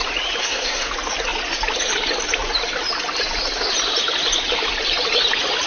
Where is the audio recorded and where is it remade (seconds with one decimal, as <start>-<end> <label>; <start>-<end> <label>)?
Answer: 0.0-0.4 recorded; 0.4-0.9 remade; 0.9-5.7 recorded